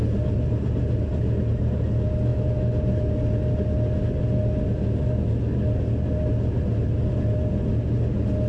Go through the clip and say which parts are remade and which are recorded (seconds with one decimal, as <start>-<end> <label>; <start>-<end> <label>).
0.0-8.5 recorded